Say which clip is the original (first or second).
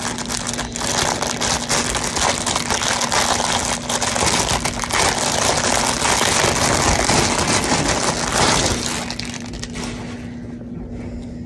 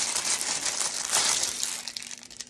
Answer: first